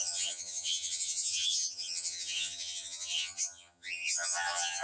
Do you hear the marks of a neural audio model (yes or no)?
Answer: yes